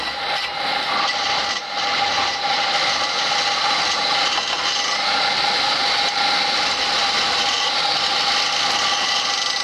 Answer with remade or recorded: recorded